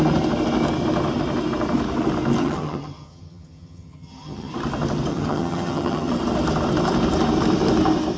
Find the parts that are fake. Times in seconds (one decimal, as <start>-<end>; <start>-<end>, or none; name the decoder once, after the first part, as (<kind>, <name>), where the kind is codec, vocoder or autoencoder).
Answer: 2.4-4.5 (vocoder, HiFi-GAN); 5.1-6.1